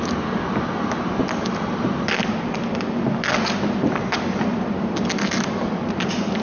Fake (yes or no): no